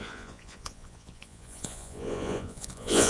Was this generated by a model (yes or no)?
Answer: yes